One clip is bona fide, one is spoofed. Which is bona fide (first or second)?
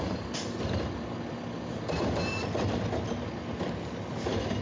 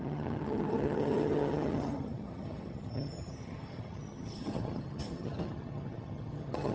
first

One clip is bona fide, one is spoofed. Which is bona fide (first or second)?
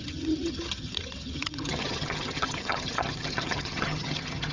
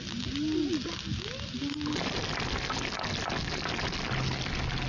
second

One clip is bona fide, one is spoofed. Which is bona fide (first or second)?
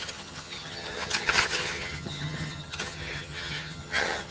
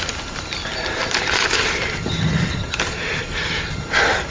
second